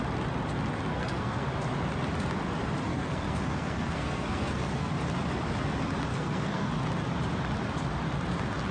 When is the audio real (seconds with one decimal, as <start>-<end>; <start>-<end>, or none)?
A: 0.0-0.9; 1.5-2.9; 4.9-6.1; 6.7-8.7

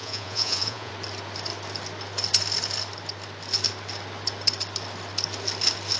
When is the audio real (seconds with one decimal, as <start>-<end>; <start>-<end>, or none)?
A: 0.9-6.0